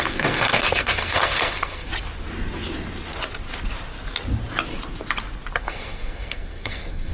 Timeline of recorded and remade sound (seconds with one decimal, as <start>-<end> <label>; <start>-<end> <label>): 0.0-1.9 remade; 1.9-5.6 recorded; 5.6-7.1 remade